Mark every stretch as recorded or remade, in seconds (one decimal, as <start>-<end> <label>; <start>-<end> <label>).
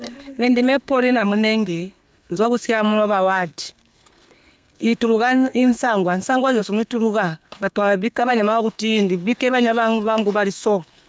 0.0-11.1 remade